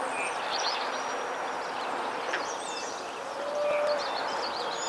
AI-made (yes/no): no